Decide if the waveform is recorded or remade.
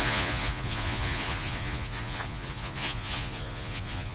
remade